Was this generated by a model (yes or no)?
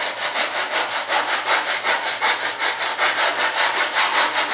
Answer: no